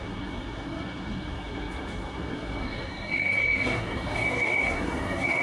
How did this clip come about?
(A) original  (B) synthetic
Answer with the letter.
B